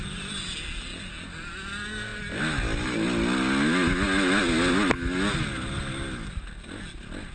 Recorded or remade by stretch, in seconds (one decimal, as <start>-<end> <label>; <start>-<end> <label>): 0.0-7.3 recorded